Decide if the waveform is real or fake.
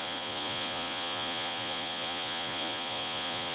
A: fake